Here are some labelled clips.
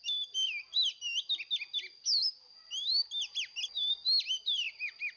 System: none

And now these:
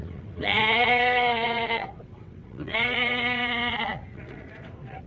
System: vocoder, WaveNeXt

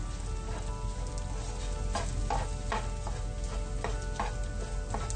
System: none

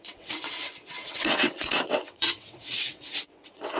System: vocoder, WaveNeXt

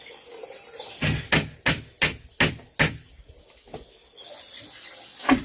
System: none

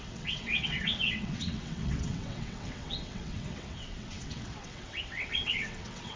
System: vocoder, WaveNeXt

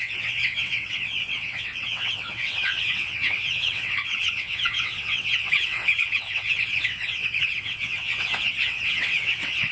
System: vocoder, WaveNeXt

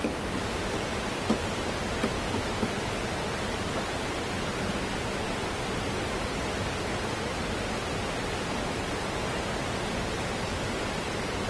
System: none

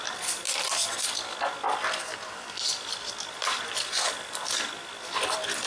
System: none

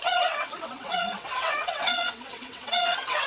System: vocoder, WaveNeXt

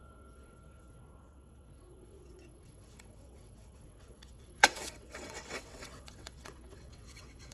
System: vocoder, WaveNeXt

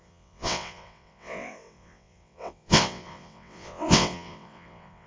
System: vocoder, WaveNeXt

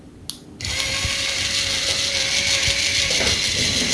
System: none